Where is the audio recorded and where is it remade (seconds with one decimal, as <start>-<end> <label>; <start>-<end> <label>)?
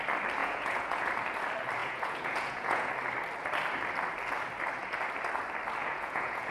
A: 0.0-0.4 recorded; 0.4-1.1 remade; 1.1-1.8 recorded; 1.8-2.9 remade; 2.9-5.8 recorded; 5.8-6.5 remade